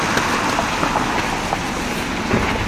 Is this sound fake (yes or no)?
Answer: no